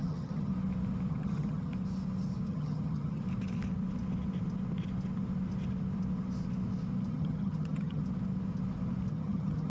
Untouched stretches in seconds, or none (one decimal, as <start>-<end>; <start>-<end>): 0.5-1.1; 1.7-2.5; 3.2-7.1; 8.0-9.1